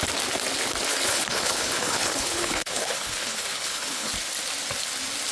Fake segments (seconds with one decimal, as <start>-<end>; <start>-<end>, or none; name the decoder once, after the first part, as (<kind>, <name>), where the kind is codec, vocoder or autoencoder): 0.9-4.1 (codec, HILCodec)